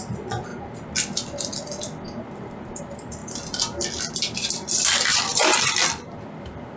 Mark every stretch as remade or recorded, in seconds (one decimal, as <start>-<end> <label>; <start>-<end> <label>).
0.0-0.5 remade; 0.5-2.8 recorded; 2.8-3.2 remade; 3.2-4.0 recorded; 4.0-6.8 remade